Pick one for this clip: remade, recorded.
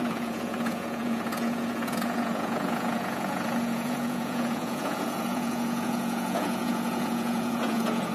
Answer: remade